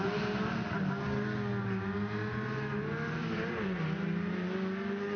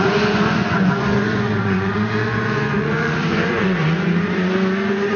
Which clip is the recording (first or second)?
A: first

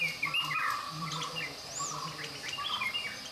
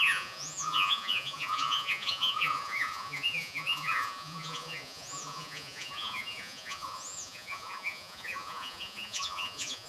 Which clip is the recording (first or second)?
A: first